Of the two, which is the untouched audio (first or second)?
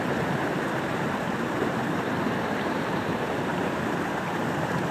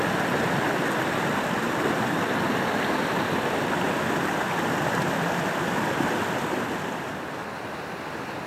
second